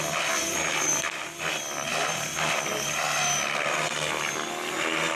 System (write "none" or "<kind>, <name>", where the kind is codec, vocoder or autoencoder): none